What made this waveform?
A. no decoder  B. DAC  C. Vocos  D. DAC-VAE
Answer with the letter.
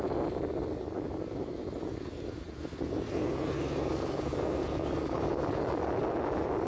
A